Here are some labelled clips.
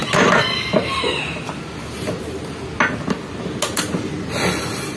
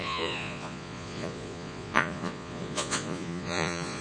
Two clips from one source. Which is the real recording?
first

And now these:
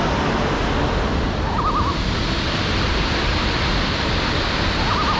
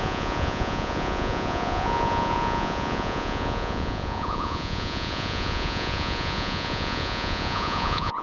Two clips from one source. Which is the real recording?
first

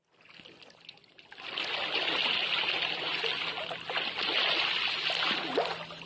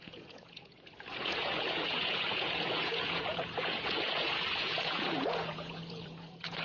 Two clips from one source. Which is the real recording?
first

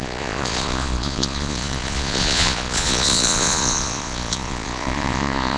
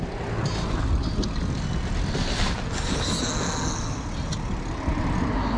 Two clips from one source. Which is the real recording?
second